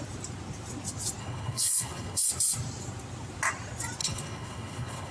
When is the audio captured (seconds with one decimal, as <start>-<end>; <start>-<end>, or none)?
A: 0.0-1.2; 2.3-4.0